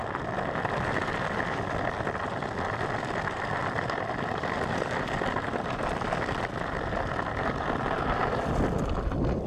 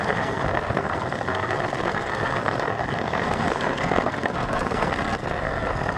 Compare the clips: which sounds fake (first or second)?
second